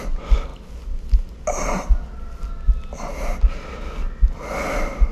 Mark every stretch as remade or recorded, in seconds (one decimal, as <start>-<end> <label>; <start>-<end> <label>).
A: 0.0-5.1 recorded